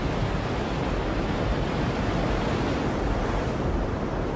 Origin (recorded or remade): recorded